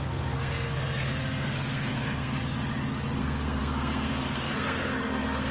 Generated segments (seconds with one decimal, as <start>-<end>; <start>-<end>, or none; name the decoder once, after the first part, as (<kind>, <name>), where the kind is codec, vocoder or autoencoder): 0.0-2.4 (codec, SNAC); 3.2-5.5